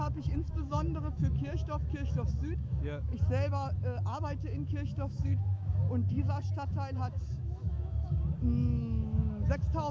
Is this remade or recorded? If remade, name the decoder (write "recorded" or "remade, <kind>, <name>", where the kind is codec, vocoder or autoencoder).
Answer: remade, autoencoder, DAC-VAE